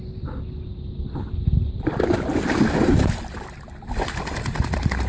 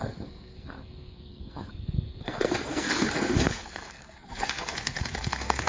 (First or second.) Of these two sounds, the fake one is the second